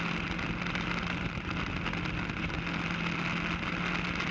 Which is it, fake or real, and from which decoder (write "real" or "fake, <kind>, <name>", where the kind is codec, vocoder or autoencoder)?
real